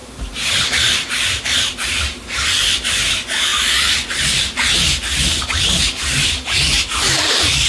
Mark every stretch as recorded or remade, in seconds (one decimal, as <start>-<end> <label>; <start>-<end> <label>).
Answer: 0.0-2.9 remade; 2.9-7.7 recorded